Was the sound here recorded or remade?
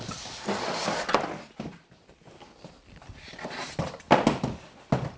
remade